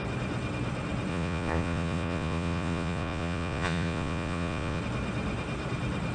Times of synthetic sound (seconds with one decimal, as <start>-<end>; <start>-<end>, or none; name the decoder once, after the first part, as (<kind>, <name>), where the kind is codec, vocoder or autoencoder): 1.1-4.8 (vocoder, Vocos)